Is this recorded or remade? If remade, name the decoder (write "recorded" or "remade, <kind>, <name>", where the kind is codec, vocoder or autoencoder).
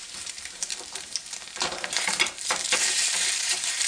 remade, vocoder, BigVGAN v2